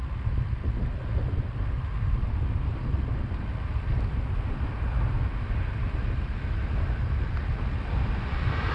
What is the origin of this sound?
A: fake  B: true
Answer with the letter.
B